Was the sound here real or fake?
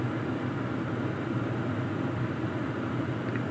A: real